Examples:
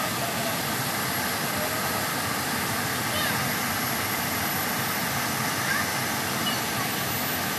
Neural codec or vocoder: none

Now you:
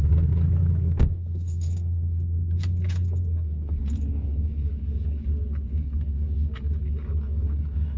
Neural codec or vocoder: codec, DAC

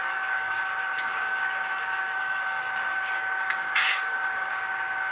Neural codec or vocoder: codec, DAC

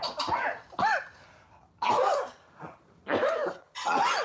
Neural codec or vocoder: none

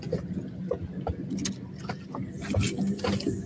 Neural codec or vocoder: none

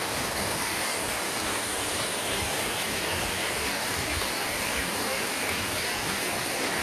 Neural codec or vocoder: codec, DAC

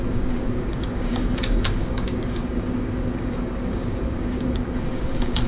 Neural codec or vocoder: codec, DAC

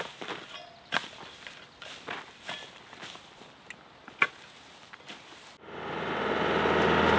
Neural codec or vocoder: none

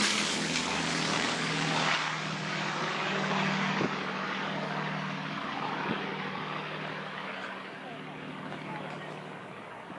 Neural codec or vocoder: codec, DAC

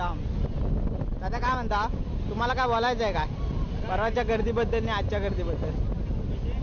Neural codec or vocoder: none